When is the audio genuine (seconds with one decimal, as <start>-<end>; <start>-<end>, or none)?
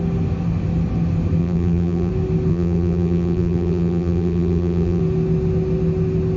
0.0-1.4; 2.1-2.5; 5.0-6.4